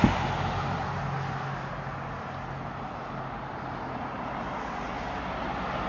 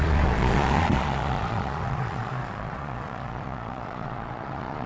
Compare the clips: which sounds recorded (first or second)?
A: first